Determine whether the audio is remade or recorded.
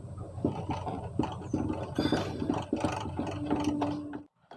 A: remade